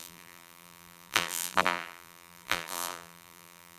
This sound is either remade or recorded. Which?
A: remade